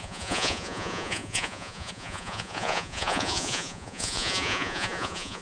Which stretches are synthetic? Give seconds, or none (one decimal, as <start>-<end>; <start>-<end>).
0.0-5.4